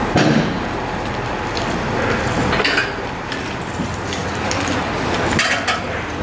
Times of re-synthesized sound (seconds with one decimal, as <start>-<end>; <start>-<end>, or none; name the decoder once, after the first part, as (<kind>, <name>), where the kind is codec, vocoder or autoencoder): none